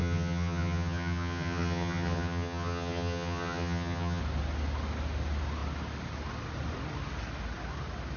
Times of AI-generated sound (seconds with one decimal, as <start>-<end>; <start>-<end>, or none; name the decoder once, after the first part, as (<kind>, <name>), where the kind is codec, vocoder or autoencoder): 0.0-4.2 (vocoder, HiFi-GAN)